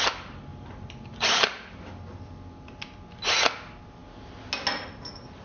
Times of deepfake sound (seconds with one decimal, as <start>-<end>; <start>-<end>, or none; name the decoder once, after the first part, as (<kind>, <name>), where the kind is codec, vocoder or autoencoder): 0.5-2.8 (vocoder, BigVGAN v2)